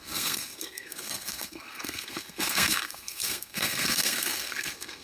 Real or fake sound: fake